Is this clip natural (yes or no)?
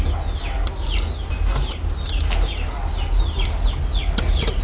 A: yes